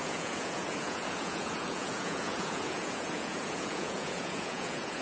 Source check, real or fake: fake